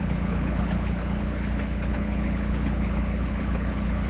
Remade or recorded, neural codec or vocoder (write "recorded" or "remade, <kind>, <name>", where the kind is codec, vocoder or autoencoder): remade, codec, HILCodec